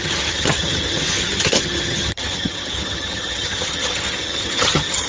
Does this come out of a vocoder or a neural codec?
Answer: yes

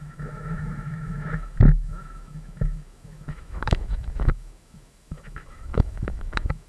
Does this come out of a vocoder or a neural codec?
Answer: yes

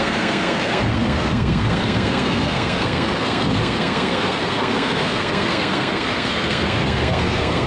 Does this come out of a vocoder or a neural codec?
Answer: yes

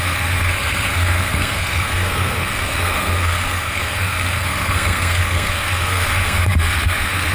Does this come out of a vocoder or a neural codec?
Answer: yes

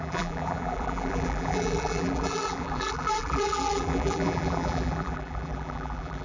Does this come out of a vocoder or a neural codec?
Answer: yes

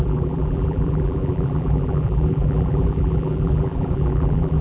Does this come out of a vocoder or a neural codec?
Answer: yes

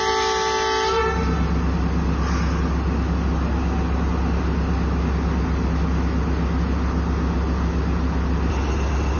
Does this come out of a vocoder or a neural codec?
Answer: no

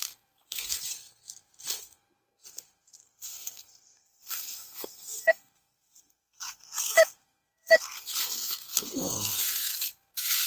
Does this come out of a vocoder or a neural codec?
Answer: yes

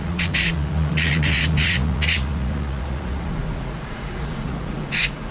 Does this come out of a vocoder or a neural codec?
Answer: yes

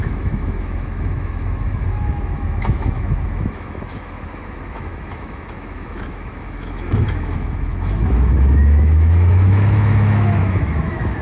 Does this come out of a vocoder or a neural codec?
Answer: yes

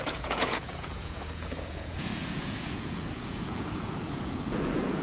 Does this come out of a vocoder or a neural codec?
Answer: yes